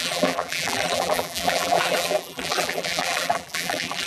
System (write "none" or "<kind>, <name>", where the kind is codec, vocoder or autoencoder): vocoder, BigVGAN v2